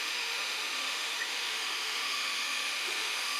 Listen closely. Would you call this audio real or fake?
fake